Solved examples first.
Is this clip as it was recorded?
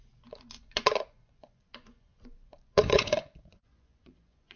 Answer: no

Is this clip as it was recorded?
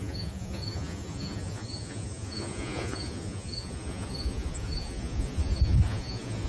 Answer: no